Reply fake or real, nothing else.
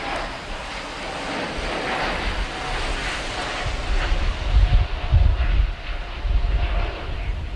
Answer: real